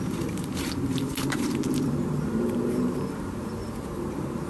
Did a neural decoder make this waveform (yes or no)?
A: yes